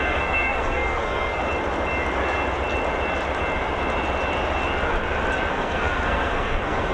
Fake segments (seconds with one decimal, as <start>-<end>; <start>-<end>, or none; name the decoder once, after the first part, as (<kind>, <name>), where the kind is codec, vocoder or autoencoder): 0.0-1.4 (codec, SNAC); 5.5-6.9